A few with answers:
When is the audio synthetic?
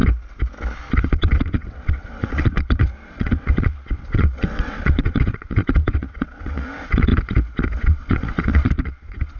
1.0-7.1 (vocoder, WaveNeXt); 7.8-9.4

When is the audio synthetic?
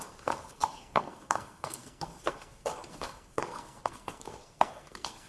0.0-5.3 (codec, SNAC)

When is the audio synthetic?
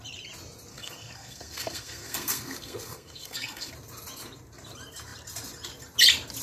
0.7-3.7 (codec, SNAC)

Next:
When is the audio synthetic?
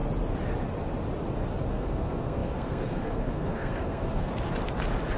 1.7-4.3 (codec, SNAC)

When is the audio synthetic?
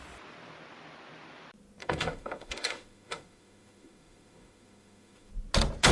1.8-5.3 (autoencoder, DAC-VAE)